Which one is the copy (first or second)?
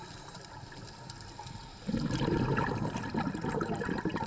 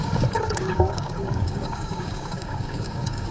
second